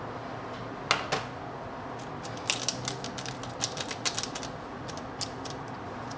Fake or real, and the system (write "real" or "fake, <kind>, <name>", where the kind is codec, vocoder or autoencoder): real